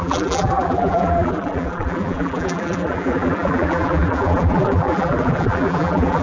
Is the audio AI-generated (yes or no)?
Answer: yes